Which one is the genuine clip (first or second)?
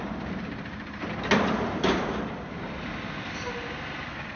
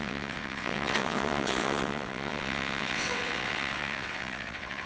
first